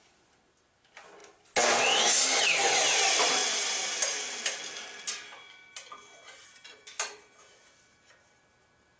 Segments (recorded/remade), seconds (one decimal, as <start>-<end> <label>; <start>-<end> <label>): 0.0-9.0 recorded